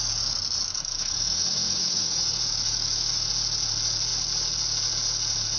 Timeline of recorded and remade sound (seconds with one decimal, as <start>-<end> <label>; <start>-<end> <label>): 0.0-0.7 recorded; 0.7-3.3 remade; 3.3-5.6 recorded